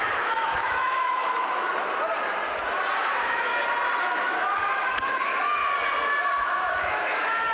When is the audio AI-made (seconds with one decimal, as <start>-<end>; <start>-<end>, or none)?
0.0-1.7; 3.0-3.5; 4.0-5.6; 6.2-7.5